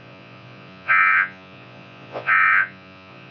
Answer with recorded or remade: remade